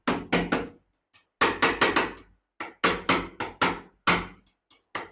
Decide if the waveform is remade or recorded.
recorded